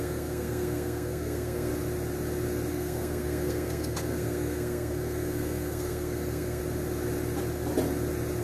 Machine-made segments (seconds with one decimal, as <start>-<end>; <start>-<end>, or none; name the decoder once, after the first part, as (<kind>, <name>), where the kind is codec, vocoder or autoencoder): 0.0-1.7 (codec, SNAC); 2.7-6.6